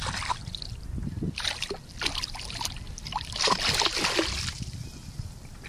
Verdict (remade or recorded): recorded